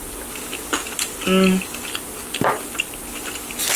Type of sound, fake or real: real